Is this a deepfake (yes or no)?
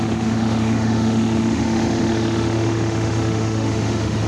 yes